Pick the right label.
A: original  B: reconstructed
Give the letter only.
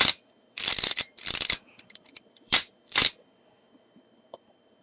B